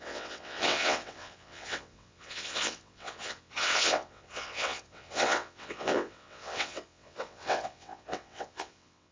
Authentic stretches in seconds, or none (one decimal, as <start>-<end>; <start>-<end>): none